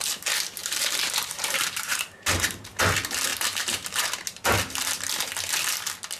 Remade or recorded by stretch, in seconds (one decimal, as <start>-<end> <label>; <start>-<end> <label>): 0.0-0.6 recorded; 0.6-2.8 remade; 2.8-3.3 recorded; 3.3-4.5 remade; 4.5-6.2 recorded